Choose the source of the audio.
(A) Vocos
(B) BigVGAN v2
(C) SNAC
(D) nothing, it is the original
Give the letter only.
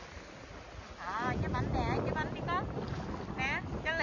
D